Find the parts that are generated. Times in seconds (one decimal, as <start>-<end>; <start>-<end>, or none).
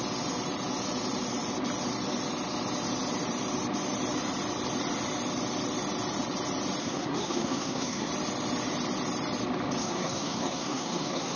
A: 6.8-8.1; 9.8-11.4